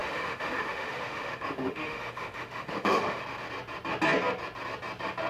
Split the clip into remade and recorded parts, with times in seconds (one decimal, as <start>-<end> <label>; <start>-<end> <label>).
0.0-3.2 remade; 3.2-5.3 recorded